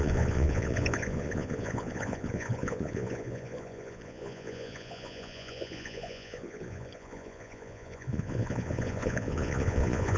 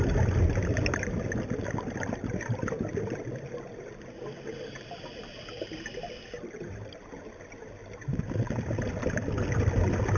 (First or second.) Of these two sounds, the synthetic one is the first